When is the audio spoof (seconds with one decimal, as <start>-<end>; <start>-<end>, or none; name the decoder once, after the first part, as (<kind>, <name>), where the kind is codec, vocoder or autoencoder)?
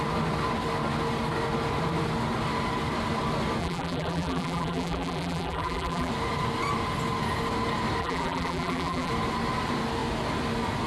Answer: 3.6-6.1 (vocoder, BigVGAN v2); 8.0-9.1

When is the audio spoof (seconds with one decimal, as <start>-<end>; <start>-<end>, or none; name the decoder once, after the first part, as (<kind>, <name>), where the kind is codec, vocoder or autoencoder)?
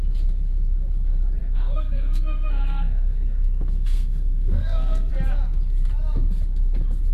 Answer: 1.4-5.1 (codec, SNAC)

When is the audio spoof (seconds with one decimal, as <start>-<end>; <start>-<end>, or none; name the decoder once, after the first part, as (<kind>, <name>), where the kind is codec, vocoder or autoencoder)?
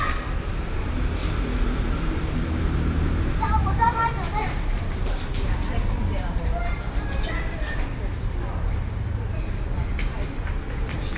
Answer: 1.2-4.7 (vocoder, BigVGAN v2)